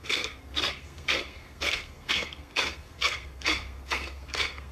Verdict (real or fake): fake